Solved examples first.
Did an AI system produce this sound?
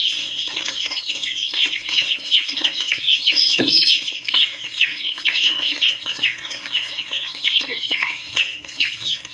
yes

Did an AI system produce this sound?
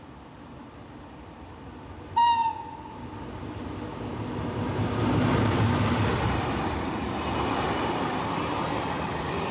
no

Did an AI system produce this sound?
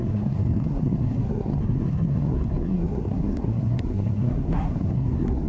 yes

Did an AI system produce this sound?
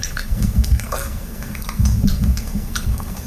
yes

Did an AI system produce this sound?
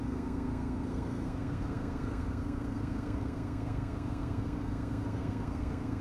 yes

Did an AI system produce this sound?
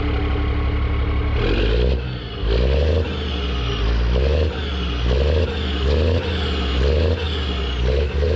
no